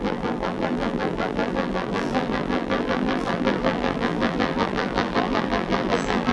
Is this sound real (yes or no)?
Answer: no